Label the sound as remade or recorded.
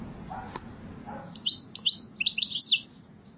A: recorded